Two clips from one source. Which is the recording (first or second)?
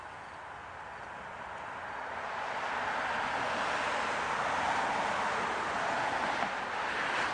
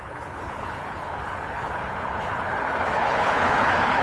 first